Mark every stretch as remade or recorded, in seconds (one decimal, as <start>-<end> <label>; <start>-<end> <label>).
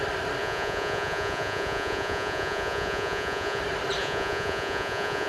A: 0.0-0.4 recorded; 0.4-3.6 remade; 3.6-4.0 recorded; 4.0-5.3 remade